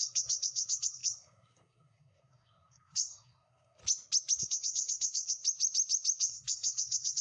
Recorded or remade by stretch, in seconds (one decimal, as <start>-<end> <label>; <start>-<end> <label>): 0.0-3.8 remade; 3.8-4.4 recorded; 4.4-5.4 remade; 5.4-6.2 recorded; 6.2-7.2 remade